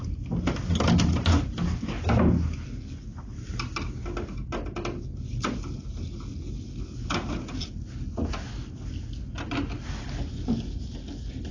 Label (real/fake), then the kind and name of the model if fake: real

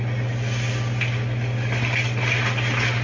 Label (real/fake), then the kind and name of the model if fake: real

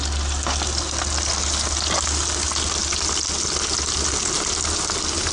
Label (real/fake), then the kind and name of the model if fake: real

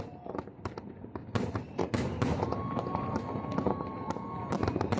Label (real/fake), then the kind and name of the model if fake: real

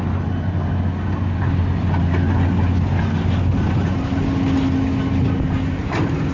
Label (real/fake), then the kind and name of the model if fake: real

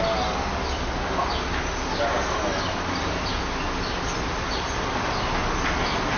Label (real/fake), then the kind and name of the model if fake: real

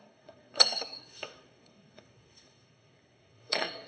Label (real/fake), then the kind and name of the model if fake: fake, codec, SNAC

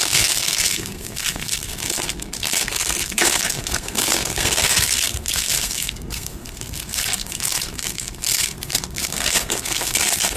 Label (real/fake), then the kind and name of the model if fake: fake, codec, SNAC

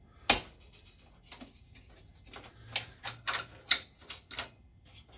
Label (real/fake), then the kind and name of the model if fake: real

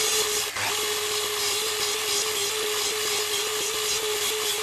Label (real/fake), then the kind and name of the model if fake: real